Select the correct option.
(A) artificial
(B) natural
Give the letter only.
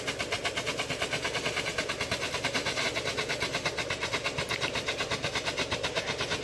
A